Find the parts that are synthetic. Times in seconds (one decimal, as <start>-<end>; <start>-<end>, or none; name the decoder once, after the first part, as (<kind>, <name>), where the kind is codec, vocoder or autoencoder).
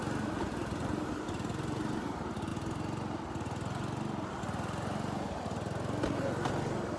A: none